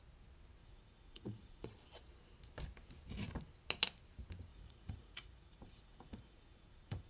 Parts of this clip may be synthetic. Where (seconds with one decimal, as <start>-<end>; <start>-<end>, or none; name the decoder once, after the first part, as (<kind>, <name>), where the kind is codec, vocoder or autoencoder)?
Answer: 0.6-1.7 (vocoder, Vocos); 4.5-7.1